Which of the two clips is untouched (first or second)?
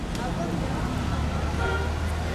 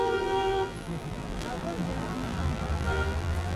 first